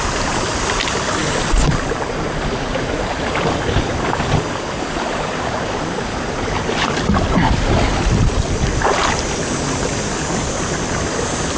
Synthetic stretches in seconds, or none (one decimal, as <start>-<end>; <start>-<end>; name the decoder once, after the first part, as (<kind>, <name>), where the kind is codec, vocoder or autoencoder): none